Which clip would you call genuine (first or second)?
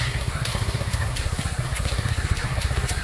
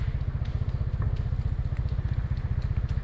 second